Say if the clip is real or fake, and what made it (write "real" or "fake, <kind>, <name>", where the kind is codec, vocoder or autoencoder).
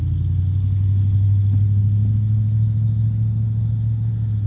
real